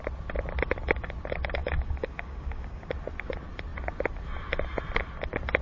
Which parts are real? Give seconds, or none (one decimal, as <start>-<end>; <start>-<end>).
0.0-1.6; 2.9-5.6